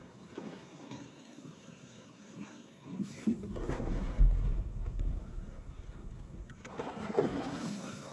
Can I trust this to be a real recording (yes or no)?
no